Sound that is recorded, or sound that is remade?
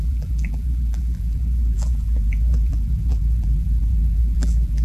remade